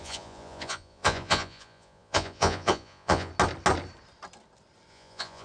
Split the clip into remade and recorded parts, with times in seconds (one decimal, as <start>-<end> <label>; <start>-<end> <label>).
0.0-3.3 remade; 3.3-4.9 recorded; 4.9-5.4 remade